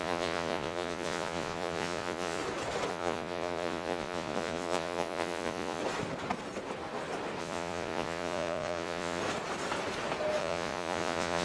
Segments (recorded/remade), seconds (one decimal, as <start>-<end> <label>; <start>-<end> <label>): 0.0-2.4 remade; 2.4-2.9 recorded; 2.9-5.8 remade; 5.8-7.4 recorded; 7.4-9.2 remade; 9.2-10.4 recorded; 10.4-11.4 remade